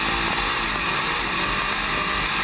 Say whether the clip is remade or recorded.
recorded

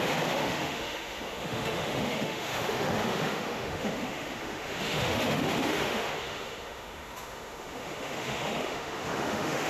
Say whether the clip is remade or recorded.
remade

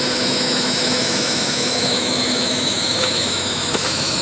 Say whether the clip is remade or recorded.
remade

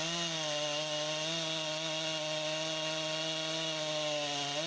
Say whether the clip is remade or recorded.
recorded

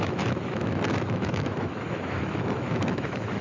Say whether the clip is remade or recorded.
remade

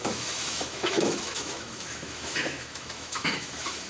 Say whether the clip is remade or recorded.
remade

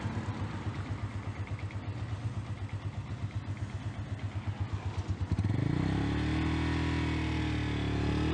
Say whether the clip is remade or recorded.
recorded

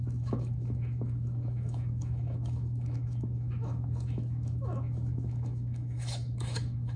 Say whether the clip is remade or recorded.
remade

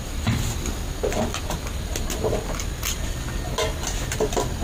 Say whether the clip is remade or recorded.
recorded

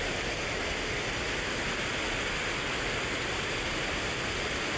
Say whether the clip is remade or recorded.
recorded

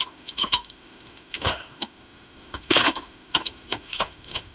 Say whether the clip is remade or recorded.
remade